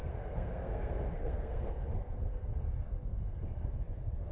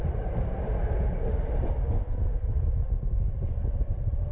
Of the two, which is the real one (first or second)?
second